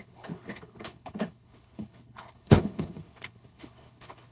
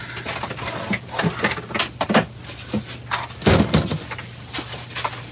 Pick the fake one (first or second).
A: first